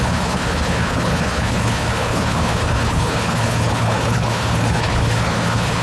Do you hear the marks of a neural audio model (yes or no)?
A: yes